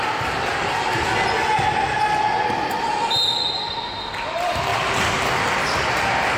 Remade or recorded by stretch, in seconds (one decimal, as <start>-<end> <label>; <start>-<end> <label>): 0.0-6.4 recorded